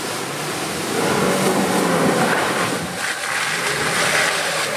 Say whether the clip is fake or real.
real